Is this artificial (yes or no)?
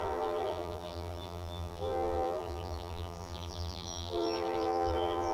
yes